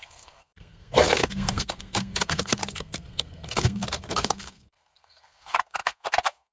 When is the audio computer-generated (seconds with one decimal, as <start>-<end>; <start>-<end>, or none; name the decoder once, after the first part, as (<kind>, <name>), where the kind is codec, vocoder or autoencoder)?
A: 0.0-6.5 (codec, SNAC)